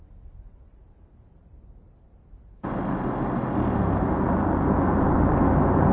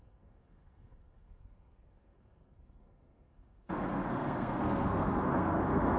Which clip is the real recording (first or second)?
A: first